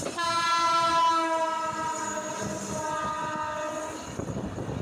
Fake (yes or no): no